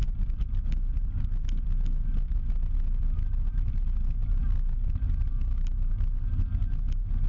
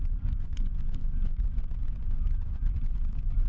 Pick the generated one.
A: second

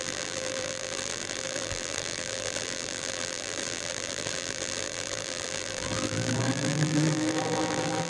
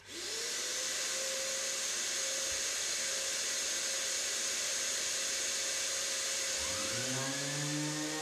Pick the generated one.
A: first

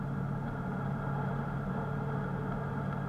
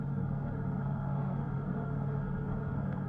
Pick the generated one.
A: second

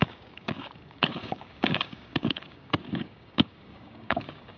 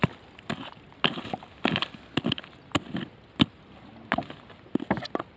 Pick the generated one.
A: first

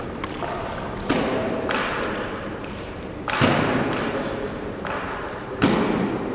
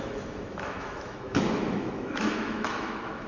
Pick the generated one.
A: second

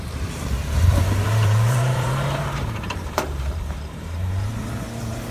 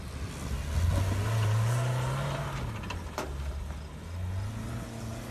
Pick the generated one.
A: first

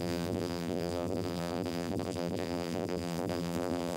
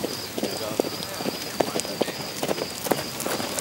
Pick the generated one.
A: first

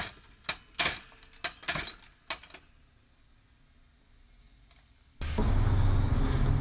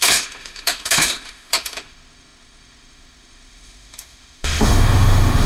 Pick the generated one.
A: second